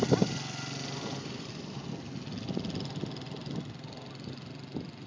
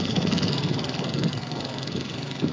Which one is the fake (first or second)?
second